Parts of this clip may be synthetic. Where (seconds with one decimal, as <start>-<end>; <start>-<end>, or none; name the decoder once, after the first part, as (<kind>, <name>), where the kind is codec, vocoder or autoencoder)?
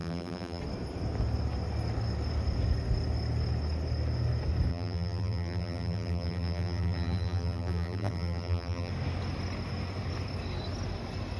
0.0-0.6 (vocoder, BigVGAN v2); 4.7-8.9